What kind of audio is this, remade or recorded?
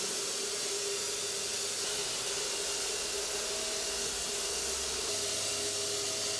recorded